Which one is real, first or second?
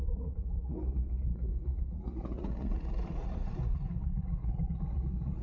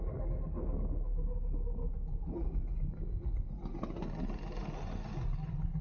second